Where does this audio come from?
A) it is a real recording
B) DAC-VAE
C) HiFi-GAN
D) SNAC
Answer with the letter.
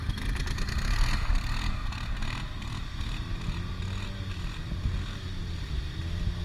A